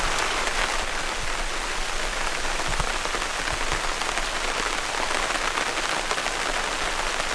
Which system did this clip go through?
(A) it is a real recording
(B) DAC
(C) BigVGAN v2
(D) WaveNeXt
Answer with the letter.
A